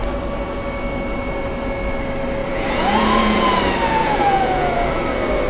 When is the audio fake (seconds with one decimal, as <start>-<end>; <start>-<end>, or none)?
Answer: 2.4-3.6; 4.0-4.9